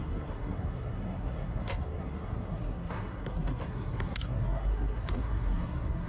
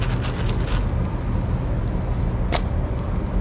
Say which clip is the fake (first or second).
first